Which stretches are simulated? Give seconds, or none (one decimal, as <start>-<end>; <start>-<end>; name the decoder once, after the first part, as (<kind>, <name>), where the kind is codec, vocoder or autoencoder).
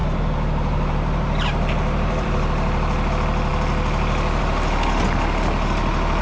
0.0-3.1 (vocoder, BigVGAN v2)